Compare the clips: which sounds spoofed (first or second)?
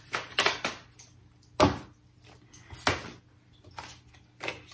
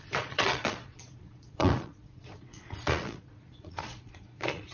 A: second